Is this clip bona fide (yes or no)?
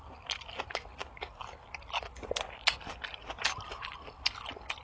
yes